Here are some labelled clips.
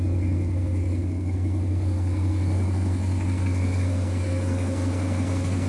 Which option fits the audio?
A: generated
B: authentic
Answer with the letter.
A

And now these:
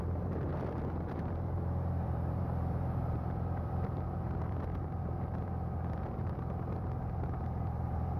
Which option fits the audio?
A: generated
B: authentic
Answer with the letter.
A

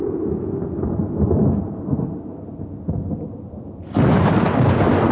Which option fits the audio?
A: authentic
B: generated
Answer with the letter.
A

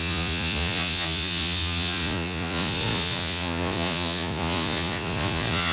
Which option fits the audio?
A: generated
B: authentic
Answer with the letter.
A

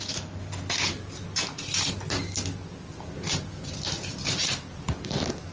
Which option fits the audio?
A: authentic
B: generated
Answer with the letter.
A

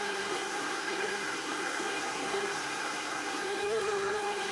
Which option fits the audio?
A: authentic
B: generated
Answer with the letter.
B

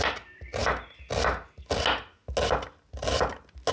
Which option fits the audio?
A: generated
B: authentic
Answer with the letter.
B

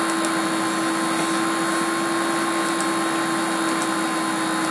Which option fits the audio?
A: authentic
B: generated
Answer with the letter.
A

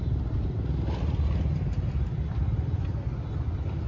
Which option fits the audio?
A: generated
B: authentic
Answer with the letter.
B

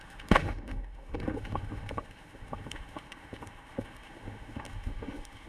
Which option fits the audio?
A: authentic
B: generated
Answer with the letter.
B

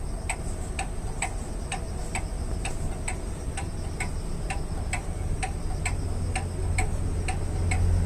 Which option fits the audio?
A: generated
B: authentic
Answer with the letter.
B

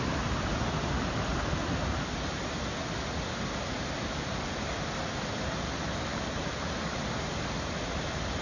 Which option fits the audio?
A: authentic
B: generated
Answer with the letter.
A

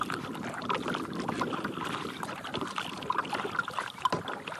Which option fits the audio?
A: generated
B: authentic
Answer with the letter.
B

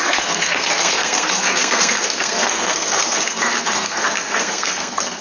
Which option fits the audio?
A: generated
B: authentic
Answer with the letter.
A